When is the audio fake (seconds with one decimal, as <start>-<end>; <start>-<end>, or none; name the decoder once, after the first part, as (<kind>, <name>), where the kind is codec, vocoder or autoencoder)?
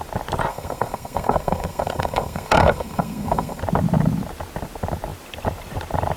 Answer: 0.5-3.6 (codec, SNAC)